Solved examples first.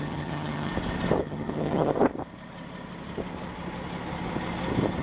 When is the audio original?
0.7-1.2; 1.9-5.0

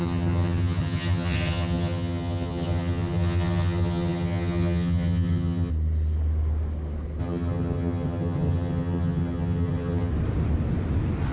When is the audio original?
5.7-7.2; 10.1-11.3